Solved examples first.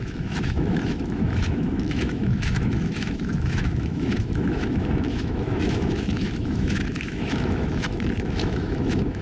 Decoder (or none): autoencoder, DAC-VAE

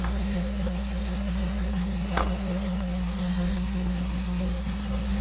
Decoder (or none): codec, SNAC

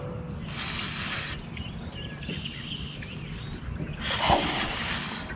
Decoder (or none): none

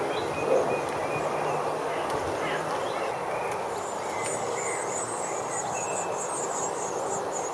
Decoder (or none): none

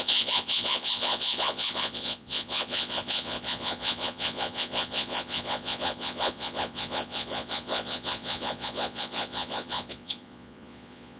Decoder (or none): vocoder, Vocos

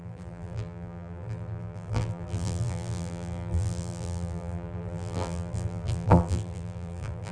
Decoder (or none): vocoder, BigVGAN v2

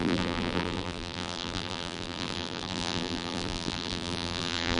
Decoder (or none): vocoder, BigVGAN v2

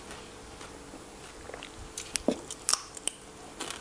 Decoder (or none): none